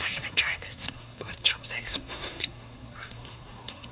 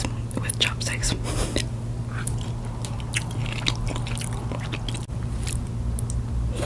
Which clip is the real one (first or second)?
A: second